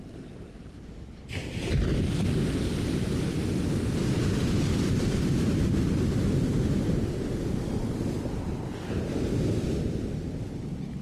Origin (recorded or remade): recorded